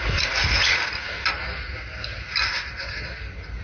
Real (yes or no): yes